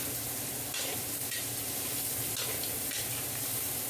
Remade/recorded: recorded